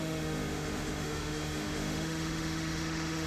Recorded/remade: remade